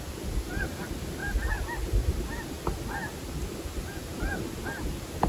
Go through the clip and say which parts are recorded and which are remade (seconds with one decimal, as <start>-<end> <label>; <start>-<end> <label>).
0.0-5.3 recorded